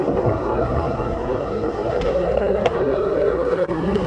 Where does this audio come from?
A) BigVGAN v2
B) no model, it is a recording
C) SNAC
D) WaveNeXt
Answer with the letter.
C